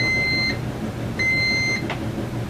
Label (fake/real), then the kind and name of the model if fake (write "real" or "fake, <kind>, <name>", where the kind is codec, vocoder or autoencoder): real